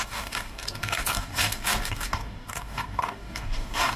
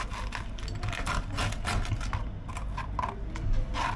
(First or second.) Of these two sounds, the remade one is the first